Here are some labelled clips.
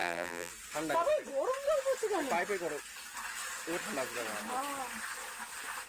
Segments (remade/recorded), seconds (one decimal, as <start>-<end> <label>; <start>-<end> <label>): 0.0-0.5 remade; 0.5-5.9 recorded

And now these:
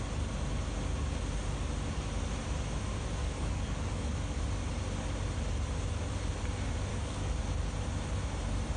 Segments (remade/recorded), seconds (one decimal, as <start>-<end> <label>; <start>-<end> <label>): 0.0-3.2 recorded; 3.2-4.4 remade; 4.4-6.9 recorded; 6.9-7.4 remade; 7.4-8.8 recorded

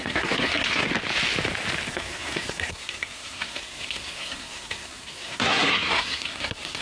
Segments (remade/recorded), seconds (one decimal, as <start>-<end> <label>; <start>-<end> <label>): 0.0-0.9 remade; 0.9-1.9 recorded; 1.9-6.8 remade

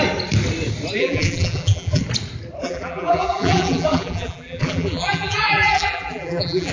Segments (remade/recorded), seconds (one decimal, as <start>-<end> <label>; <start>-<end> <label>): 0.0-1.0 recorded; 1.0-2.0 remade; 2.0-2.6 recorded; 2.6-6.7 remade

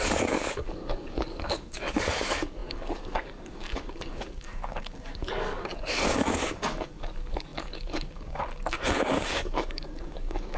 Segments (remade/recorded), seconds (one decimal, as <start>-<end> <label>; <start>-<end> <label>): 0.0-10.6 remade

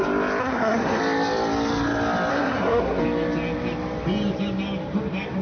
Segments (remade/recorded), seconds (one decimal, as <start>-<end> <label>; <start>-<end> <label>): 0.0-0.4 recorded; 0.4-1.0 remade; 1.0-2.3 recorded; 2.3-3.0 remade; 3.0-5.4 recorded

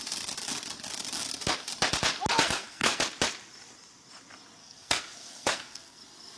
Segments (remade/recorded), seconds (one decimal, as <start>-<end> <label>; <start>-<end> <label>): 0.0-2.3 recorded; 2.3-3.0 remade; 3.0-4.6 recorded; 4.6-6.0 remade; 6.0-6.4 recorded

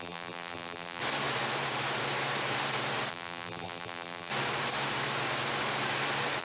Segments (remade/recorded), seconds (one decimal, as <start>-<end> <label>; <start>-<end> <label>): 0.0-1.0 remade; 1.0-3.1 recorded; 3.1-4.3 remade; 4.3-6.4 recorded